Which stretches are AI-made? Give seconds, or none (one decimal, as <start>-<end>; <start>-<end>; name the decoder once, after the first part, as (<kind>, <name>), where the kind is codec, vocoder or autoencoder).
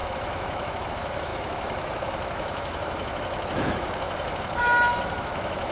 0.0-5.7 (autoencoder, DAC-VAE)